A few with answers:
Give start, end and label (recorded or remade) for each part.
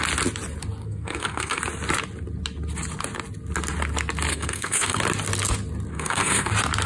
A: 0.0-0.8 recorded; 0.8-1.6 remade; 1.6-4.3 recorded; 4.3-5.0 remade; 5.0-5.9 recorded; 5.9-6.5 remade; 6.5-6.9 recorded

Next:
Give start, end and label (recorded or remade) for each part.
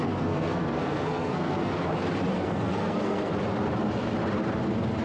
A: 0.0-1.7 remade; 1.7-2.3 recorded; 2.3-3.3 remade; 3.3-5.0 recorded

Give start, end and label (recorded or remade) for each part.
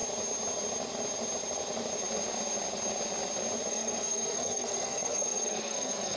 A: 0.0-3.7 recorded; 3.7-6.2 remade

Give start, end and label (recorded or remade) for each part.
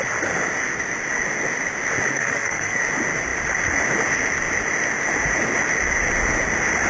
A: 0.0-2.1 recorded; 2.1-2.8 remade; 2.8-6.9 recorded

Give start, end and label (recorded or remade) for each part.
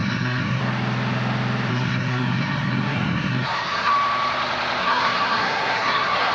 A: 0.0-0.6 remade; 0.6-1.7 recorded; 1.7-3.9 remade; 3.9-4.8 recorded; 4.8-6.3 remade